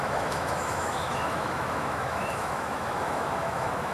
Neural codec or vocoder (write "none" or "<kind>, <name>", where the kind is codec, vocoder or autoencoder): autoencoder, DAC-VAE